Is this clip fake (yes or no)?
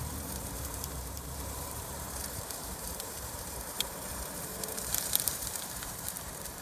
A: yes